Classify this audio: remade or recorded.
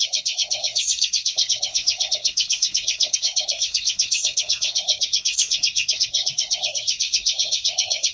remade